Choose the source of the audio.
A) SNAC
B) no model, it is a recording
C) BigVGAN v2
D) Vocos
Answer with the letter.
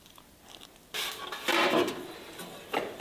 B